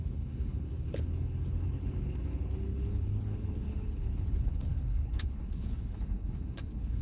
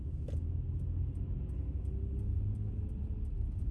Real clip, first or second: second